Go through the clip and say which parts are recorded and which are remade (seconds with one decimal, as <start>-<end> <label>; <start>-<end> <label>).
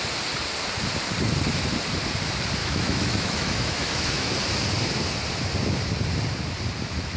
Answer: 0.0-2.6 recorded; 2.6-4.3 remade; 4.3-7.2 recorded